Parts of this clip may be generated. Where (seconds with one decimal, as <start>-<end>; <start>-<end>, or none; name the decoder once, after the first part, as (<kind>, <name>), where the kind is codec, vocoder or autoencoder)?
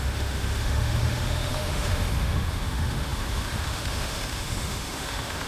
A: 0.0-5.5 (autoencoder, DAC-VAE)